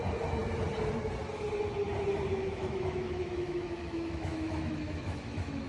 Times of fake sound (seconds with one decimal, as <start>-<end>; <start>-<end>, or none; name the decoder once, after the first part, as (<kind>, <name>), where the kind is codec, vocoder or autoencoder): 2.3-5.7 (autoencoder, DAC-VAE)